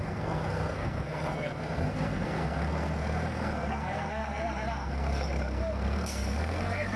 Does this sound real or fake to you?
fake